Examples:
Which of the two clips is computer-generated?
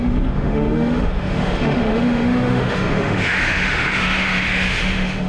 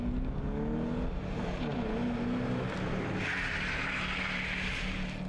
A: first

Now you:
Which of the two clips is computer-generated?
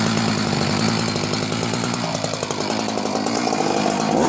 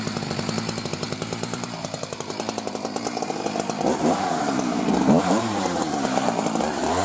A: second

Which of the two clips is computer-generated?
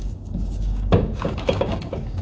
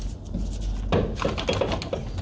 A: first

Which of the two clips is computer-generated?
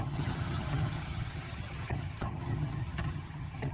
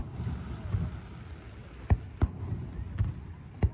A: first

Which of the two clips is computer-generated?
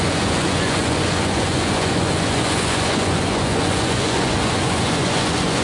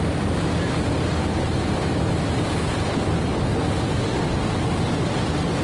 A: first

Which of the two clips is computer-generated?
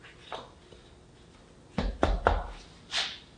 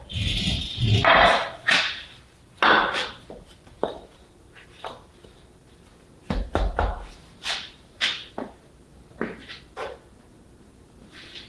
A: second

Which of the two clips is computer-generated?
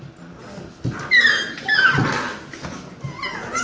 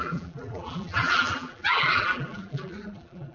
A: second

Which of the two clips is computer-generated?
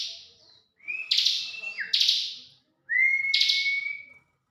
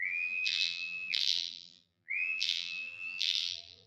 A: second